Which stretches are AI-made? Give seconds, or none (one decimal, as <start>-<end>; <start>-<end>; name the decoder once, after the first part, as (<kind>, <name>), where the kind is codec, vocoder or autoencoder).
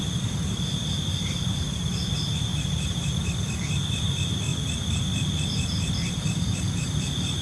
0.0-7.4 (vocoder, BigVGAN v2)